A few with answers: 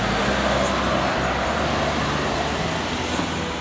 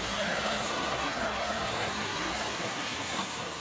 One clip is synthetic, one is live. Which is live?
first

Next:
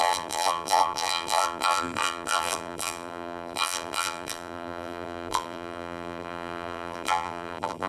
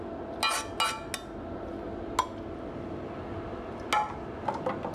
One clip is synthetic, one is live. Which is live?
second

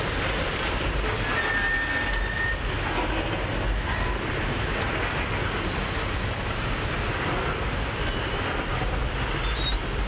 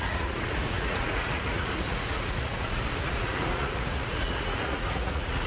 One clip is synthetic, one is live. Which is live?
first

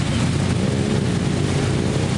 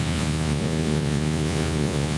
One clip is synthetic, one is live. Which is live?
first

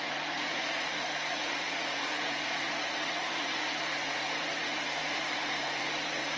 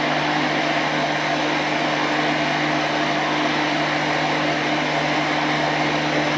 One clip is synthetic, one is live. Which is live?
second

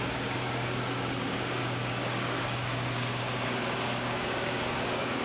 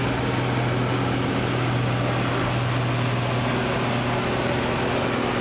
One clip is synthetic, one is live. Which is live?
second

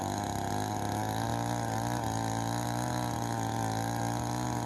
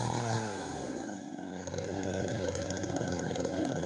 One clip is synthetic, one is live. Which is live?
first